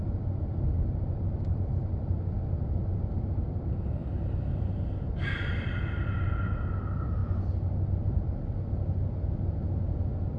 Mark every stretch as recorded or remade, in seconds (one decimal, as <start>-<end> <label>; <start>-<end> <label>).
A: 0.0-10.4 recorded